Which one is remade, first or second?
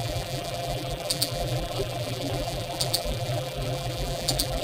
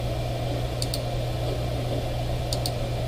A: first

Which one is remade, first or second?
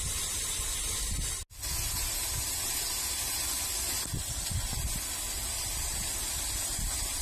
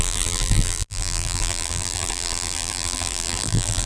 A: second